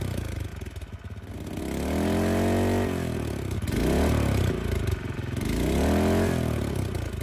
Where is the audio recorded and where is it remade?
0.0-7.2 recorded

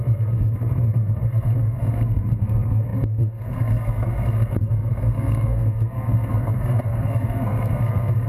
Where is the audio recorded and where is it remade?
0.0-8.3 remade

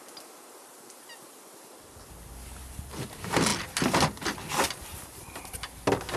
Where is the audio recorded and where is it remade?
0.0-6.2 recorded

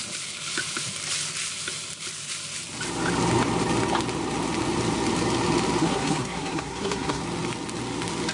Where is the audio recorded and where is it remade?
0.0-5.8 recorded; 5.8-7.2 remade; 7.2-8.3 recorded